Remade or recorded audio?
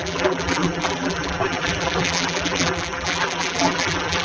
remade